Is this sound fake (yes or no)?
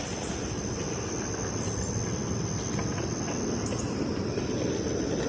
no